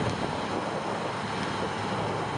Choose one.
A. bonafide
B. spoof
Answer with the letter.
A